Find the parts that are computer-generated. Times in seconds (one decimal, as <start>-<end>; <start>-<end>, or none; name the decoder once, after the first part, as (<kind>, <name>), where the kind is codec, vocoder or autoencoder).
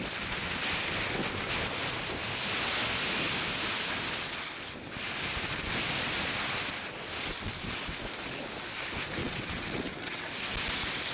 9.2-10.3 (vocoder, WaveNeXt)